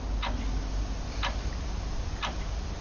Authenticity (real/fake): real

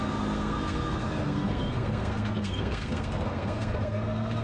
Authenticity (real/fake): fake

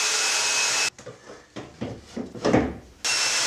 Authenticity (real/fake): real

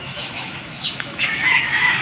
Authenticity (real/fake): fake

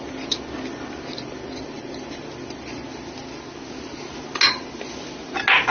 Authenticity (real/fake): real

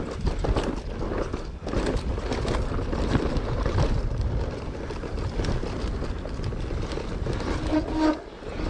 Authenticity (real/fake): real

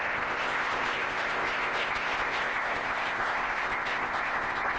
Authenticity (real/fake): fake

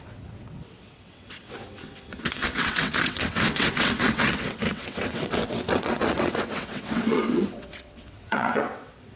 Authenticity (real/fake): fake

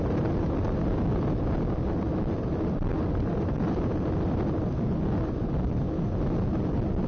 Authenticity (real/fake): real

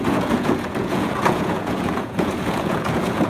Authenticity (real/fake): fake